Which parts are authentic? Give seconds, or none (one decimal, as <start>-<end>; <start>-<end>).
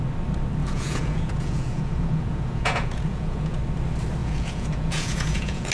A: 0.0-0.6; 3.6-4.2